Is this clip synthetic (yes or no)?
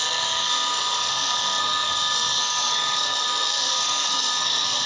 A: yes